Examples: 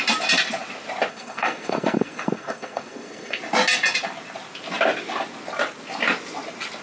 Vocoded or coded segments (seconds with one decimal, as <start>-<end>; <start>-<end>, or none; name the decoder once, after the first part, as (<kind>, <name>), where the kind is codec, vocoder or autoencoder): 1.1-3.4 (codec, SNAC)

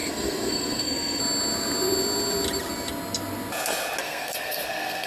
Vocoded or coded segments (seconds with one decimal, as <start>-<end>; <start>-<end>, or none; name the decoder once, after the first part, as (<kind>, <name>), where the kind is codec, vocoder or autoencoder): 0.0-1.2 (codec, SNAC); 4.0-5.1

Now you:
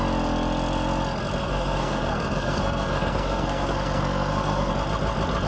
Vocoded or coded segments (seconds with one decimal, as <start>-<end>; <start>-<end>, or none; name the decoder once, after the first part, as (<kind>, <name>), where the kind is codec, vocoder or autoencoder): 1.4-4.7 (codec, SNAC)

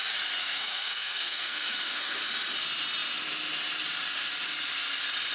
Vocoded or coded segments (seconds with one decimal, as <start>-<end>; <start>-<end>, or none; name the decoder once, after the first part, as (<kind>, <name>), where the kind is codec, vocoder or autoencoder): 0.4-2.3 (codec, SNAC)

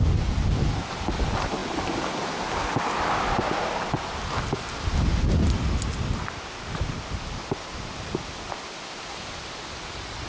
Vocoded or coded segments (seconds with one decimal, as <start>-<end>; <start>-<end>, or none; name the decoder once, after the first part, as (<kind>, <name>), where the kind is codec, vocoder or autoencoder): none